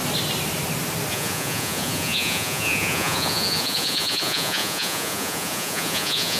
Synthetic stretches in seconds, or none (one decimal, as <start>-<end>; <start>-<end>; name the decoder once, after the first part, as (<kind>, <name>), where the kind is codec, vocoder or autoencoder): 1.1-6.4 (vocoder, Vocos)